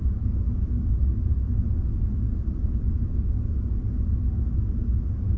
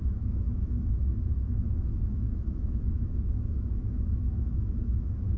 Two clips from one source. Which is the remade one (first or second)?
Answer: second